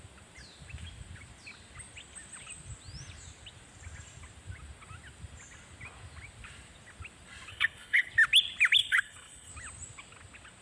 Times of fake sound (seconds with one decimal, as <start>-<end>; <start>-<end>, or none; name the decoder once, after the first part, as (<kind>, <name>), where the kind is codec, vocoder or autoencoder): 7.5-8.1 (codec, HILCodec); 8.8-9.5